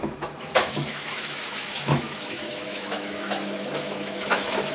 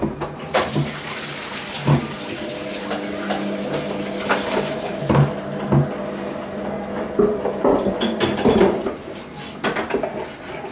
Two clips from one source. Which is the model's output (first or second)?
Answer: first